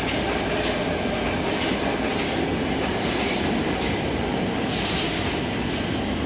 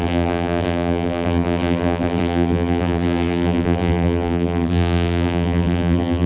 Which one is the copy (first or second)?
second